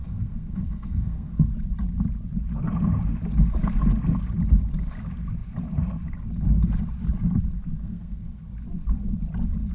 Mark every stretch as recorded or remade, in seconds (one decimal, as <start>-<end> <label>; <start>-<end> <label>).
0.0-1.5 remade; 1.5-7.8 recorded; 7.8-8.4 remade; 8.4-9.7 recorded